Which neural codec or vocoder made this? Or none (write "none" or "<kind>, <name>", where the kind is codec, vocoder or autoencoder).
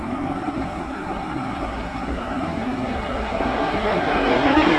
codec, SNAC